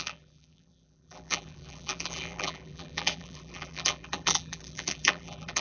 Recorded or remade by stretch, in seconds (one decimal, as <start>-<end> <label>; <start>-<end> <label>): 0.0-5.6 remade